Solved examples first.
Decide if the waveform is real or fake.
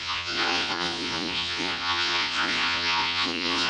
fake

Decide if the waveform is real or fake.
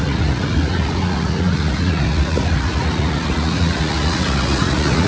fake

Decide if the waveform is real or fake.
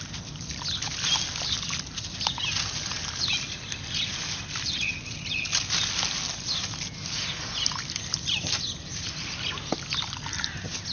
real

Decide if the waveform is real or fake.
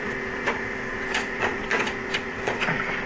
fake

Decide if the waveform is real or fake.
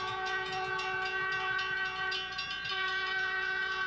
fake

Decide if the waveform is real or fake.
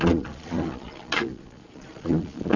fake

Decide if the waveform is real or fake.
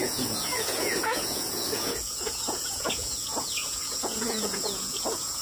fake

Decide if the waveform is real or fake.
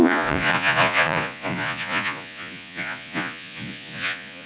fake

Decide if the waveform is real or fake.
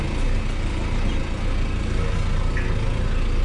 real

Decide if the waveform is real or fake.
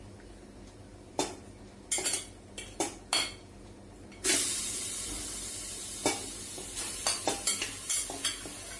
real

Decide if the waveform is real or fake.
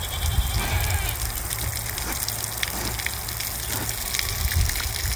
real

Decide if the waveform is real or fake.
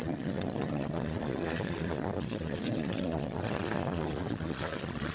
fake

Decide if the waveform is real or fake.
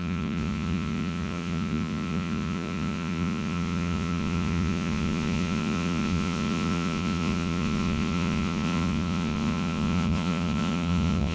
fake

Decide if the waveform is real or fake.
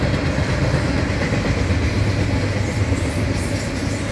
real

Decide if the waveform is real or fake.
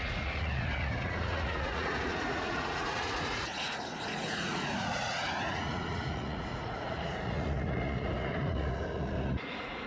fake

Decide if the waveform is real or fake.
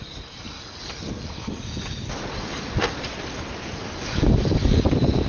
real